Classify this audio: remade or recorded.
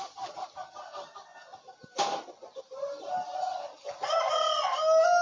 recorded